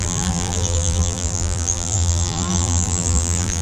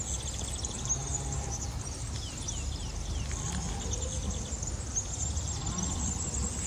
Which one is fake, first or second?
first